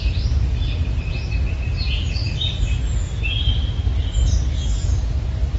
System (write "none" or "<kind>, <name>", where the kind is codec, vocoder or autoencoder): none